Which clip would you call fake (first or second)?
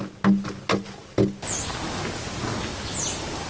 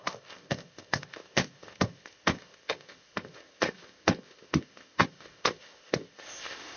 second